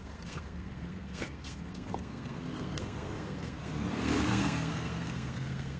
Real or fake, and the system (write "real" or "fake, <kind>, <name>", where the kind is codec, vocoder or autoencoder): fake, codec, SNAC